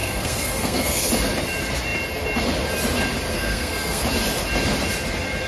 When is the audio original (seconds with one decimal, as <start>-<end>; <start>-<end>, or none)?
1.1-3.3; 4.0-5.5